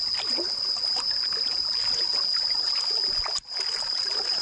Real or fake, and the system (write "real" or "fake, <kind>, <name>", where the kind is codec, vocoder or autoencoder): real